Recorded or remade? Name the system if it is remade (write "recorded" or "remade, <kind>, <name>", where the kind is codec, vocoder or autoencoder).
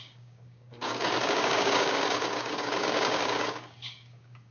remade, codec, DAC